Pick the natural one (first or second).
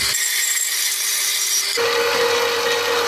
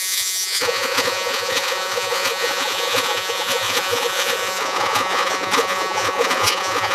first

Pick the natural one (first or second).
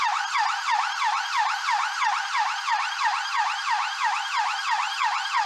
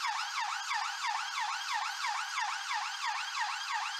second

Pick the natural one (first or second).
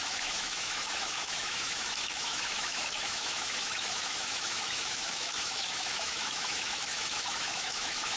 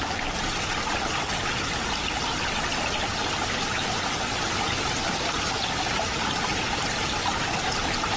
second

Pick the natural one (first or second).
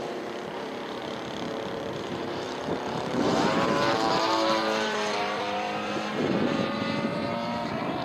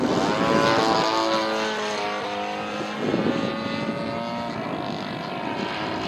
second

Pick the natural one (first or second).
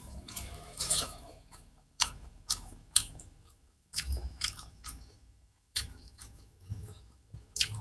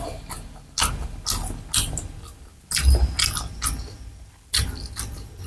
second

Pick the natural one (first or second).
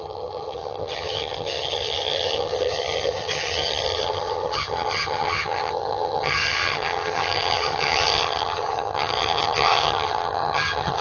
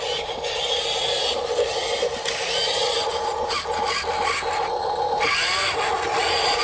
second